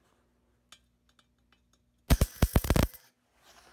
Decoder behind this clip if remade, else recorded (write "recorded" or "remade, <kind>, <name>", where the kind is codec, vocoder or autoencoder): recorded